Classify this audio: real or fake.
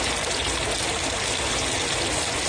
real